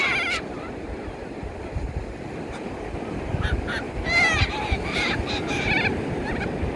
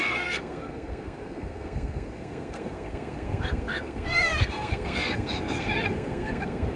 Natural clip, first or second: first